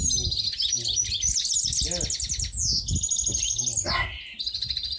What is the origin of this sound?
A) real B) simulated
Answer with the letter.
A